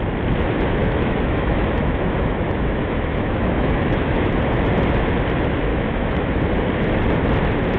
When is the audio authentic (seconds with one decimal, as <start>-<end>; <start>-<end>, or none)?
0.0-0.8; 4.3-5.7; 6.4-7.8